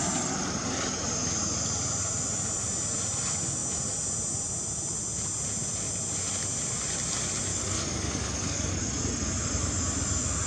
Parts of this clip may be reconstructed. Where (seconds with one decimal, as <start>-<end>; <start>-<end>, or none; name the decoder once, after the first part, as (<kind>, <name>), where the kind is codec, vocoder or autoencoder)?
7.5-8.8 (codec, DAC)